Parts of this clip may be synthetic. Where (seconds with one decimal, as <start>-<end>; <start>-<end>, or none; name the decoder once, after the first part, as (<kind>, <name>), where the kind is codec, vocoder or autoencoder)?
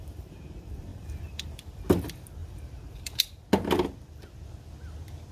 0.9-1.8 (vocoder, BigVGAN v2); 2.4-3.5